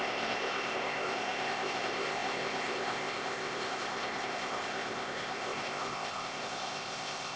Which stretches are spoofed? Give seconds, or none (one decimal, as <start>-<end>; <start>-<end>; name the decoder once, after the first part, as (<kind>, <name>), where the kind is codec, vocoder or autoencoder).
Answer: 0.0-7.4 (codec, ZipCodec)